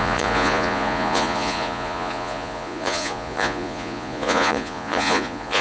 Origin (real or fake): fake